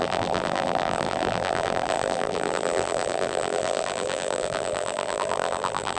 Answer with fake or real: fake